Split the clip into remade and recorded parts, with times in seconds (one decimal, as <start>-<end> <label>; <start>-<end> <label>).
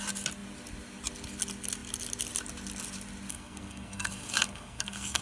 0.0-3.3 recorded; 3.3-5.2 remade